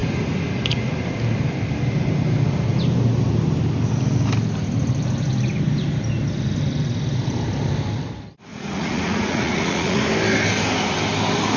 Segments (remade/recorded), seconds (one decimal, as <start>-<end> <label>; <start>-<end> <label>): 0.0-8.5 recorded; 8.5-10.0 remade; 10.0-11.6 recorded